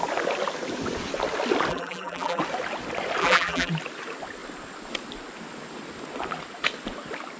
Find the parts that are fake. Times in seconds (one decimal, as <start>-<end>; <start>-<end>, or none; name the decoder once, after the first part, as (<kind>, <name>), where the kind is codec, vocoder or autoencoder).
1.7-2.4 (vocoder, BigVGAN v2); 3.2-3.7